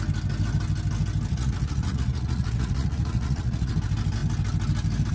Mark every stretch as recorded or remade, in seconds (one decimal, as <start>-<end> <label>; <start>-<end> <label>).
0.0-1.3 recorded; 1.3-3.7 remade; 3.7-5.1 recorded